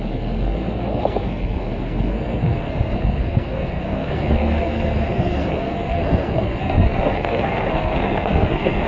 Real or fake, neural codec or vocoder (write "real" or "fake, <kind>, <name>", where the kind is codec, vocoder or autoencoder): fake, codec, SNAC